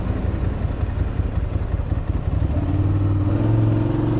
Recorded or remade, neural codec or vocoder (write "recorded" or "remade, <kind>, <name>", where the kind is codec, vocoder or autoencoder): recorded